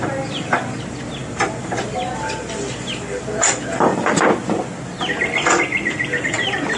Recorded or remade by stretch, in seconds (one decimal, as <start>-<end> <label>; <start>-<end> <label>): 0.0-1.2 recorded; 1.2-3.2 remade; 3.2-6.8 recorded